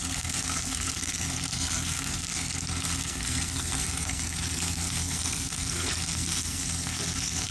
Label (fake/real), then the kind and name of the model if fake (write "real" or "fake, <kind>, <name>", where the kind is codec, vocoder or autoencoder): fake, codec, SNAC